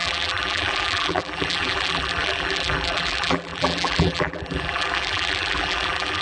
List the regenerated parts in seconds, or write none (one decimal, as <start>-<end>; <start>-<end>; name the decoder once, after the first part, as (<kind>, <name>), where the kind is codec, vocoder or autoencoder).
0.0-6.2 (vocoder, BigVGAN v2)